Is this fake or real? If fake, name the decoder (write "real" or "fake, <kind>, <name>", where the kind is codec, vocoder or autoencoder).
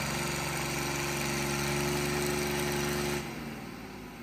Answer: real